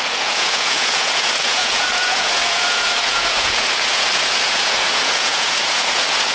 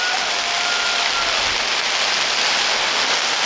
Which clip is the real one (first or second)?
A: second